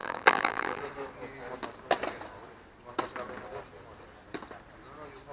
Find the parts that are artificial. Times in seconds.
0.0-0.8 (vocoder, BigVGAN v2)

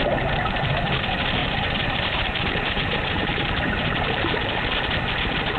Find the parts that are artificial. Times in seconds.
1.4-4.8 (vocoder, BigVGAN v2)

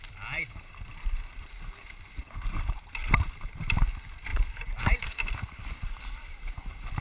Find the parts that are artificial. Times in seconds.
2.2-2.9 (vocoder, BigVGAN v2); 4.3-7.0

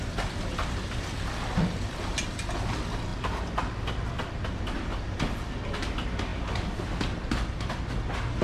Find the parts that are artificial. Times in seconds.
none